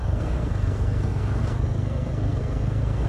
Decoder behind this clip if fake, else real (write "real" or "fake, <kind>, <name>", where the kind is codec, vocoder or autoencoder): fake, codec, SNAC